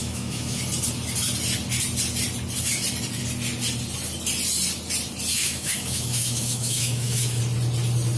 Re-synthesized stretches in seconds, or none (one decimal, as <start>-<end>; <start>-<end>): 0.0-0.6; 5.3-7.4